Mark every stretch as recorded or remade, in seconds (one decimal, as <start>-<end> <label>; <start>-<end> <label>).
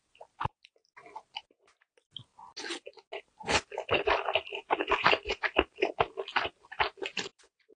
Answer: 0.0-4.6 recorded; 4.6-5.9 remade; 5.9-7.8 recorded